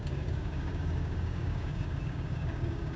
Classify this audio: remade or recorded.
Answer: remade